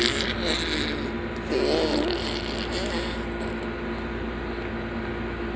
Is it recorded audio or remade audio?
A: recorded